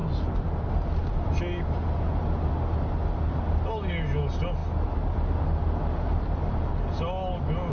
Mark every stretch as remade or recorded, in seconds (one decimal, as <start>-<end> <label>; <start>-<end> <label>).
0.0-7.7 recorded